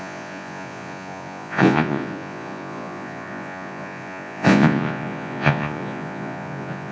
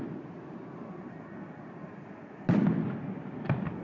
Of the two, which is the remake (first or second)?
first